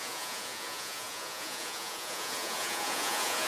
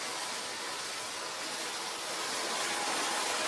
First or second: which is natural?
second